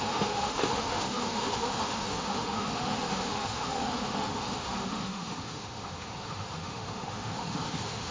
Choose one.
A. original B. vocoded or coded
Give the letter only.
B